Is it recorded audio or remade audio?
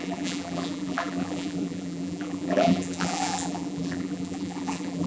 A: remade